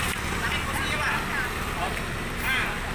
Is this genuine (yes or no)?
yes